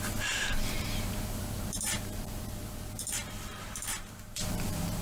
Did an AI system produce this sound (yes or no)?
yes